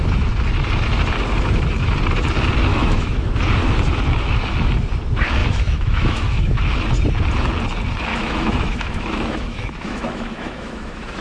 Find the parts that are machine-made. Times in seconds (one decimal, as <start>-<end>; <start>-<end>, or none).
2.7-3.4; 5.4-6.4; 8.1-11.2